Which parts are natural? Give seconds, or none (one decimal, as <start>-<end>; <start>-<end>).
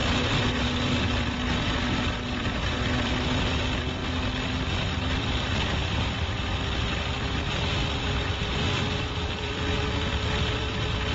0.0-0.6